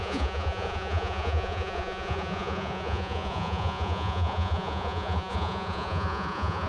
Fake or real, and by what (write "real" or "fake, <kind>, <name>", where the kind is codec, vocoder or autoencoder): fake, vocoder, Vocos